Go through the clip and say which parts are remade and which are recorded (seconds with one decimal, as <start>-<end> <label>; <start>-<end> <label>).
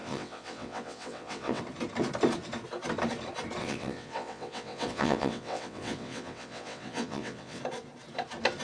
0.0-1.6 remade; 1.6-3.6 recorded; 3.6-7.6 remade; 7.6-8.6 recorded